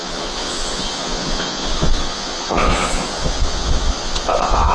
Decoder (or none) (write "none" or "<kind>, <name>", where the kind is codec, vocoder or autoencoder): vocoder, Vocos